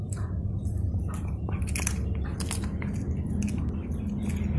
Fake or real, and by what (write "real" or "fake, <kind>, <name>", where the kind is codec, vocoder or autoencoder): real